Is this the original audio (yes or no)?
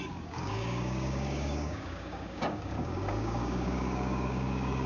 no